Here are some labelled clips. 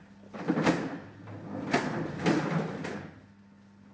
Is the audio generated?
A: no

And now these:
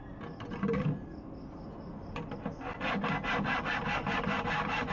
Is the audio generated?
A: no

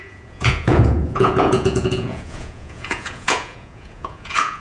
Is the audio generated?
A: yes